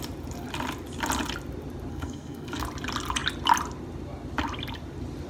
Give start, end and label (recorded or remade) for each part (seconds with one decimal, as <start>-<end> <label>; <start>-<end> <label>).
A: 0.0-1.9 recorded; 1.9-2.6 remade; 2.6-5.3 recorded